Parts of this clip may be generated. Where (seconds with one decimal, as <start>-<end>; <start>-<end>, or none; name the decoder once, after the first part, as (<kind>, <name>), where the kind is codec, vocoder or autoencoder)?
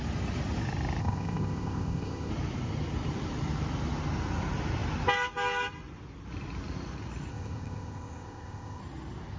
1.0-2.3 (codec, ZipCodec); 7.3-8.8